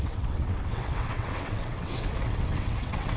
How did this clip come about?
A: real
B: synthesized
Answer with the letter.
B